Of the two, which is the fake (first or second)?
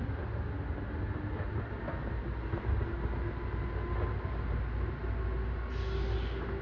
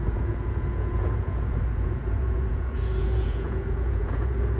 second